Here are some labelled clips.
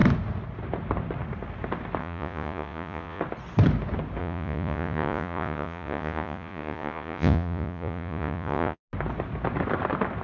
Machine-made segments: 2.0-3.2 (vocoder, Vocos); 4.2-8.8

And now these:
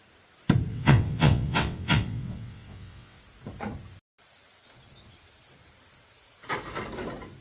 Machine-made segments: 0.7-3.2 (vocoder, WaveNeXt)

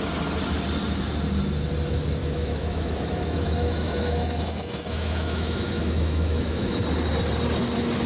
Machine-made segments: 2.2-6.8 (autoencoder, DAC-VAE)

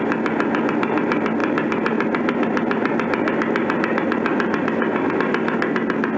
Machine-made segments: none

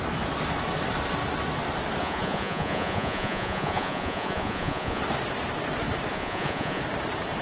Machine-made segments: 2.0-5.0 (vocoder, Vocos); 6.1-6.8

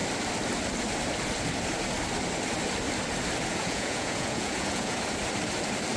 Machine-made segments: 3.5-5.0 (vocoder, Vocos)